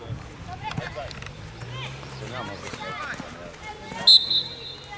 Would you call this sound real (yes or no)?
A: yes